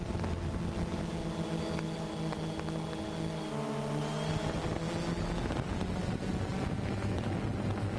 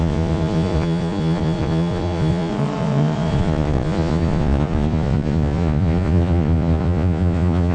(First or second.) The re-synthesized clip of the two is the second